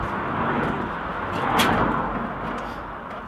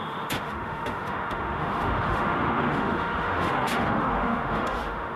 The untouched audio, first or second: first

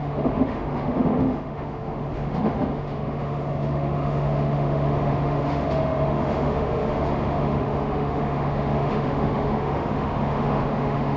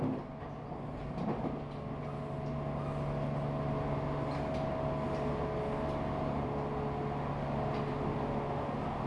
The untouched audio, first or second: second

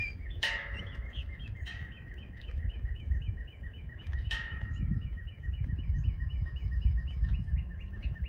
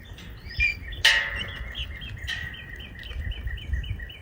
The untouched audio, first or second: second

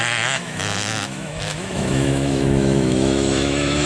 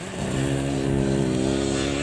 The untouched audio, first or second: second